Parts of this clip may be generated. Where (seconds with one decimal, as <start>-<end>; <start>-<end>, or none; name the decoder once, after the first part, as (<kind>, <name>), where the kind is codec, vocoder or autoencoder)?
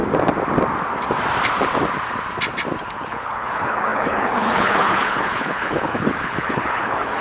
2.8-7.2 (codec, HILCodec)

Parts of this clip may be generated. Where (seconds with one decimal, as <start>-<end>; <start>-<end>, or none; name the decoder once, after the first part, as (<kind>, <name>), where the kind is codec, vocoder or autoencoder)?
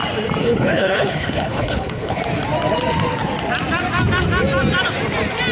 0.4-2.2 (codec, HILCodec)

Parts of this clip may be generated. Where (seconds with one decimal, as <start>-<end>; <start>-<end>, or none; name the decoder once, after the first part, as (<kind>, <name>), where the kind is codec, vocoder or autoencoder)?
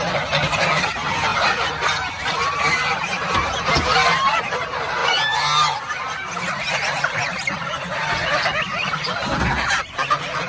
none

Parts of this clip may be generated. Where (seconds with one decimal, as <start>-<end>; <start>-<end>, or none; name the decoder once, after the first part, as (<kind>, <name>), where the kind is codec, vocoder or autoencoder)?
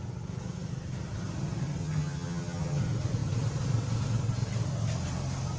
1.8-2.8 (vocoder, HiFi-GAN)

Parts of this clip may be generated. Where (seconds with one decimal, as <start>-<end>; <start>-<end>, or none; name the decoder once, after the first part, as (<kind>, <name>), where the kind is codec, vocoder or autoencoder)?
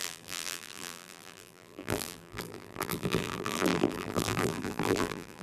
0.0-5.4 (vocoder, BigVGAN v2)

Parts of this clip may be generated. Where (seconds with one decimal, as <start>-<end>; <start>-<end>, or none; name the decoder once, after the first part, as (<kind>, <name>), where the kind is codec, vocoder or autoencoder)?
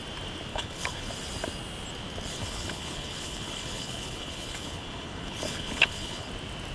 0.5-1.1 (codec, HILCodec); 2.3-6.3